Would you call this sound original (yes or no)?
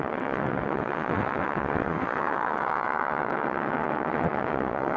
no